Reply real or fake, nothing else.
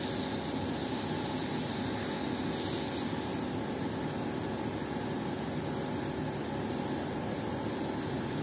real